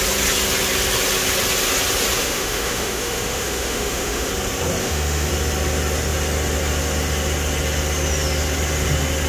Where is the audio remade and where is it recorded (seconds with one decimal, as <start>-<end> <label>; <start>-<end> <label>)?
0.0-2.2 recorded; 2.2-4.3 remade; 4.3-4.8 recorded; 4.8-5.3 remade; 5.3-9.3 recorded